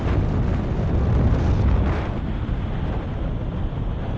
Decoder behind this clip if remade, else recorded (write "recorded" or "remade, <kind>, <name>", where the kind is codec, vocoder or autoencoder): recorded